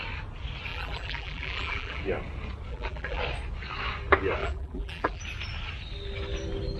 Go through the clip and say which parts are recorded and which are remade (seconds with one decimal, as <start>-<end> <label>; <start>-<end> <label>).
0.0-0.7 recorded; 0.7-2.0 remade; 2.0-2.7 recorded; 2.7-3.2 remade; 3.2-4.4 recorded; 4.4-5.2 remade; 5.2-6.8 recorded